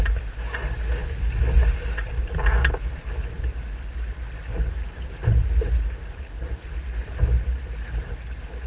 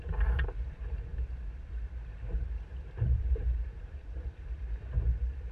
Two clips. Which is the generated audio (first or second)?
second